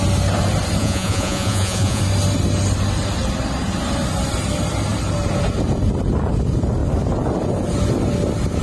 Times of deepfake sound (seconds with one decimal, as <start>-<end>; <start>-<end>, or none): 0.8-2.0